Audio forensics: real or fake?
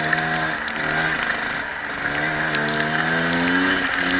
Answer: real